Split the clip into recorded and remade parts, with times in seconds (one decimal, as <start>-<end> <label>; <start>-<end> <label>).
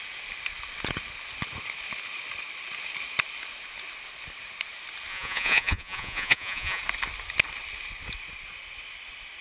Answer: 0.0-5.1 recorded; 5.1-6.8 remade; 6.8-9.4 recorded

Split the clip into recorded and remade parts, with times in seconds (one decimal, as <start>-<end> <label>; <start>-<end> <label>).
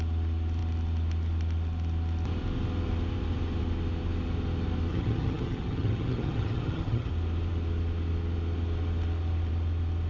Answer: 0.0-4.9 recorded; 4.9-7.1 remade; 7.1-10.1 recorded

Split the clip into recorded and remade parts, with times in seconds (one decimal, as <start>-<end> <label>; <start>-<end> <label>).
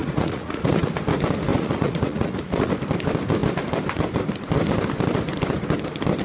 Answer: 0.0-0.9 remade; 0.9-1.5 recorded; 1.5-2.7 remade; 2.7-6.2 recorded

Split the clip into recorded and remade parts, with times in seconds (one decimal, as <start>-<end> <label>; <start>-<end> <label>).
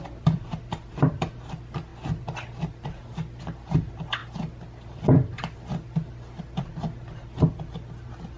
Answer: 0.0-8.4 recorded